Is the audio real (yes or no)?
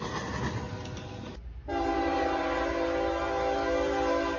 yes